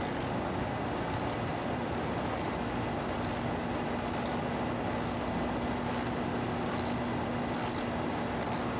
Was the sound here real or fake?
real